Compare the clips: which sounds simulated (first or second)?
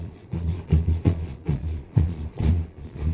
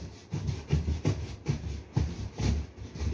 first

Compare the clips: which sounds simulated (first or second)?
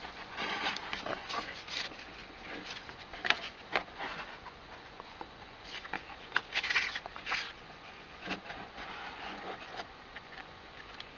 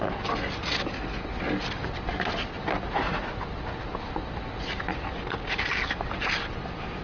first